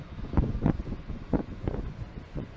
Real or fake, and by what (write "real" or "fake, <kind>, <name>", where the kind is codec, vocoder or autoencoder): fake, vocoder, Vocos